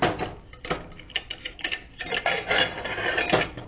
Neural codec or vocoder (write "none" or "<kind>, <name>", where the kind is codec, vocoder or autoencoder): none